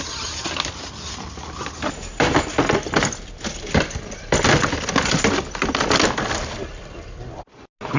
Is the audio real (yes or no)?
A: yes